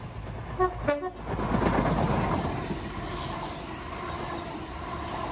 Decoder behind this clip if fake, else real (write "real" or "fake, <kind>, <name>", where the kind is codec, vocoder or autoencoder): real